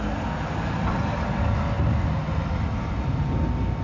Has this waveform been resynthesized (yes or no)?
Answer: no